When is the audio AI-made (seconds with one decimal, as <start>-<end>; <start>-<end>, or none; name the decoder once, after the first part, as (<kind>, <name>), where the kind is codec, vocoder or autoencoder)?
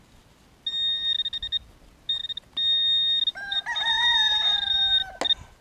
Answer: 3.3-4.8 (vocoder, BigVGAN v2)